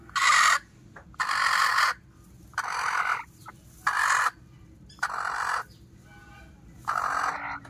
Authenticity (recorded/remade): recorded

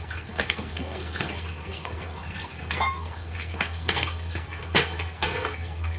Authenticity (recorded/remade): remade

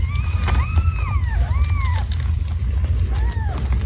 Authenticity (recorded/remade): recorded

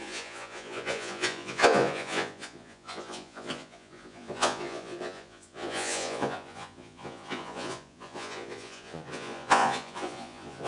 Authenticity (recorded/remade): remade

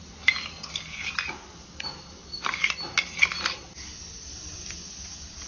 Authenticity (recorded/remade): recorded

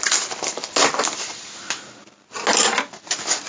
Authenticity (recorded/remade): recorded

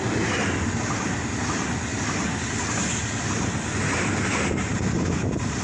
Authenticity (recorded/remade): recorded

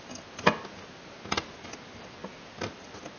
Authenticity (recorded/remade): recorded